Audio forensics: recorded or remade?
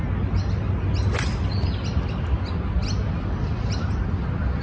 recorded